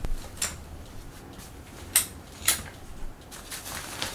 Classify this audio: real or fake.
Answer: real